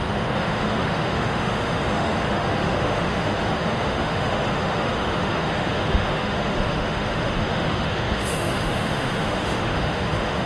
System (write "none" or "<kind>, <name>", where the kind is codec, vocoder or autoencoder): autoencoder, DAC-VAE